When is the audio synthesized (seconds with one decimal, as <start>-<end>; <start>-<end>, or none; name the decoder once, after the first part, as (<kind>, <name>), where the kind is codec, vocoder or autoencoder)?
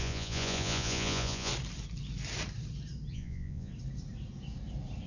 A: 0.0-1.5 (vocoder, Vocos); 3.1-3.7